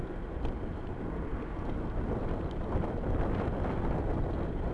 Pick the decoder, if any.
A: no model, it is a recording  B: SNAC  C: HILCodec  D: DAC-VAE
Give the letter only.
A